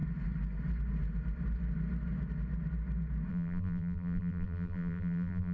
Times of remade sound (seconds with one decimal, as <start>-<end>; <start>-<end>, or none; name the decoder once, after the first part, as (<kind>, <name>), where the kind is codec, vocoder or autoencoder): 3.3-5.5 (vocoder, BigVGAN v2)